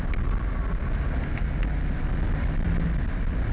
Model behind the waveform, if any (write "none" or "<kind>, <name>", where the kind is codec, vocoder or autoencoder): none